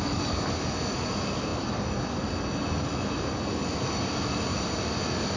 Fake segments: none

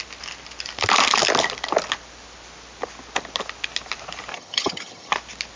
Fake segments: 4.3-5.1

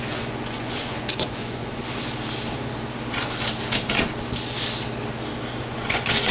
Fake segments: 0.0-1.8; 5.6-6.3

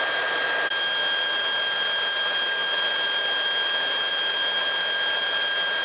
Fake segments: none

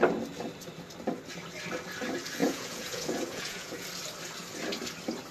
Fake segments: 2.4-3.7

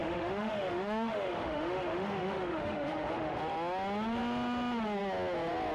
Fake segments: 0.0-3.4

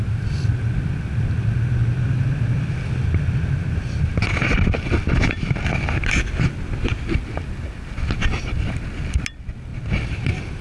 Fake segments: 9.7-10.6

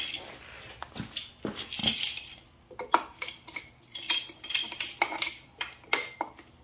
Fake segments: none